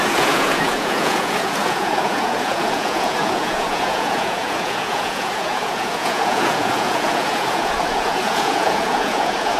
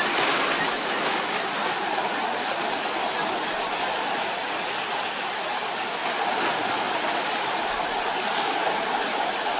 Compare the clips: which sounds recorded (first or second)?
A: second